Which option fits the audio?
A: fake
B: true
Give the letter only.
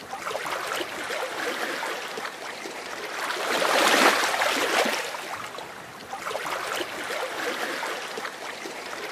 B